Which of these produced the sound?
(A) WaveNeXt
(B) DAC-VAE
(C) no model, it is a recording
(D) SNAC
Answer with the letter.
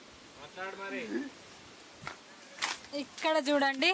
C